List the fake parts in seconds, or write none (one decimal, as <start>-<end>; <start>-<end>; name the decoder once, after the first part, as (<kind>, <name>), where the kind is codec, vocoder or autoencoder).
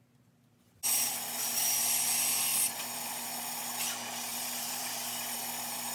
4.3-4.9 (vocoder, BigVGAN v2)